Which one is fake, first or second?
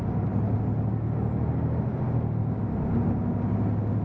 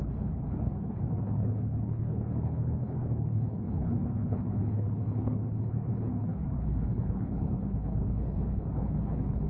second